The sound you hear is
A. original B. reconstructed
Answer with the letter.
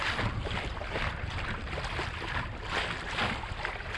A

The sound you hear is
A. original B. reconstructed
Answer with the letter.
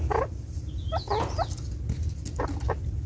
A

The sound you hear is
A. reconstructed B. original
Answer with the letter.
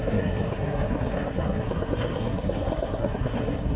A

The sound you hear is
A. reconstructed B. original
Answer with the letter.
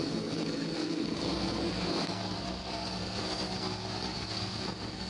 A